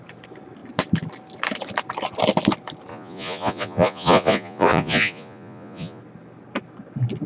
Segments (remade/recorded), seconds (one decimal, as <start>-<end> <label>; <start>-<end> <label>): 0.0-2.9 recorded; 2.9-6.0 remade; 6.0-7.3 recorded